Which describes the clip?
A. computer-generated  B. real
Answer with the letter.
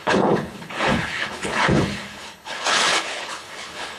A